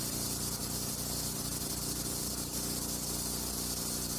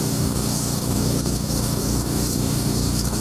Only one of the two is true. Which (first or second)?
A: first